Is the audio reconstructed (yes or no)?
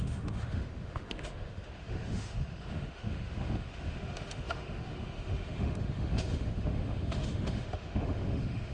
yes